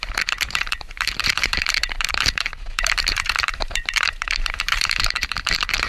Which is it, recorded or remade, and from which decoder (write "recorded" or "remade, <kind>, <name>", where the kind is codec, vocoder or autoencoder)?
remade, vocoder, BigVGAN v2